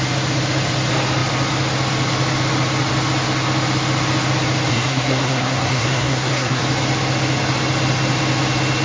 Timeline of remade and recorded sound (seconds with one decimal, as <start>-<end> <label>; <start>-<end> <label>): 0.0-4.7 recorded; 4.7-6.6 remade; 6.6-8.8 recorded